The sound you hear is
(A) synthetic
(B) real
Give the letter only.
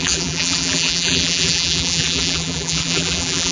A